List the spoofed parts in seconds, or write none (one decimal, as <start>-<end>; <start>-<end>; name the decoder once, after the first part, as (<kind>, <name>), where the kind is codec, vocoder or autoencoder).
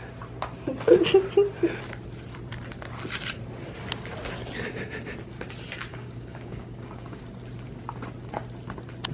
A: 5.9-7.2 (codec, DAC)